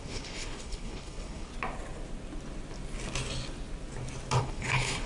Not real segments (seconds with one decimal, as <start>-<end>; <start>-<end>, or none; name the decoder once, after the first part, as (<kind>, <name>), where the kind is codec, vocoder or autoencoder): 0.0-1.5 (codec, HILCodec); 4.4-5.1